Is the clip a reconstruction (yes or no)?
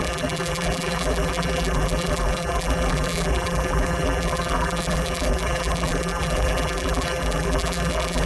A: yes